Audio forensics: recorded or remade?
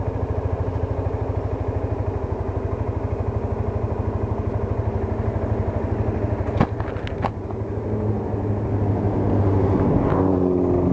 recorded